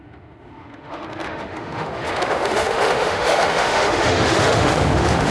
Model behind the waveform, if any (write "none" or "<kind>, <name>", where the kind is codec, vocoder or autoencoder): autoencoder, DAC-VAE